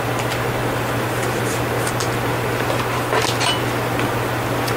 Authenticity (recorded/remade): recorded